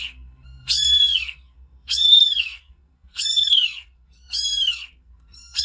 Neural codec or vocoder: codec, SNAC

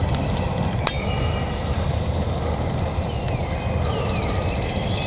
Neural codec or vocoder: none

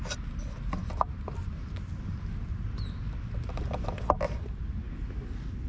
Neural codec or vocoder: none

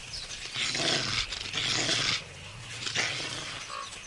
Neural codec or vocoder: none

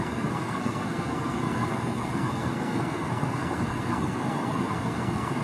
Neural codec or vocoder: codec, SNAC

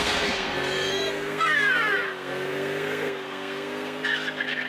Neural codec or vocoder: codec, SNAC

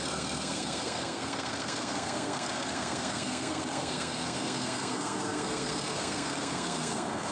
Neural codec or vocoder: codec, SNAC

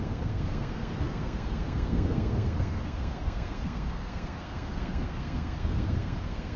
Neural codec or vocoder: codec, SNAC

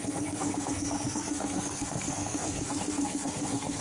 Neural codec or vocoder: codec, SNAC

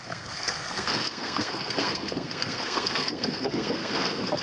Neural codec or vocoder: codec, SNAC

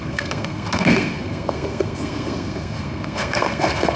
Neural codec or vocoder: codec, SNAC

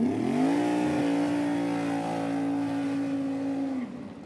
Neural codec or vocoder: none